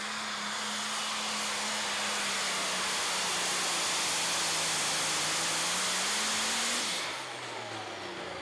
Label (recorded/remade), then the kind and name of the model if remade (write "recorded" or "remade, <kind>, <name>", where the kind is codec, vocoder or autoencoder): recorded